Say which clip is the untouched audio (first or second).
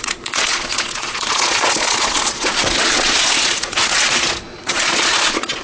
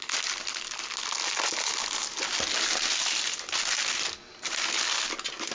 second